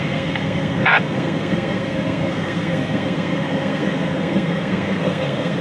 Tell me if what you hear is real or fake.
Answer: fake